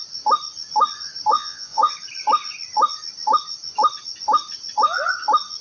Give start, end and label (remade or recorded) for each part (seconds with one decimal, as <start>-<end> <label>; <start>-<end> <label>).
0.0-1.3 recorded; 1.3-1.9 remade; 1.9-5.6 recorded